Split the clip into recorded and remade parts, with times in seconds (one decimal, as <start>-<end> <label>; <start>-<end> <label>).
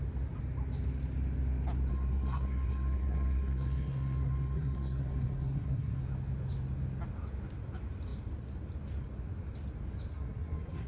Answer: 0.0-1.9 recorded; 1.9-6.0 remade; 6.0-10.1 recorded; 10.1-10.9 remade